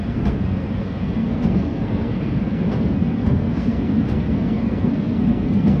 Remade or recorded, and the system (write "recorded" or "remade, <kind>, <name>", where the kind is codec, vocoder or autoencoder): remade, codec, SNAC